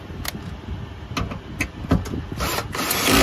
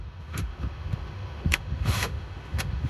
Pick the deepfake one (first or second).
second